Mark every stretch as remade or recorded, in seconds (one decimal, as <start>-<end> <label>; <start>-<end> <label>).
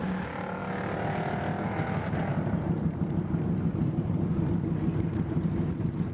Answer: 0.0-2.3 recorded; 2.3-5.5 remade; 5.5-6.1 recorded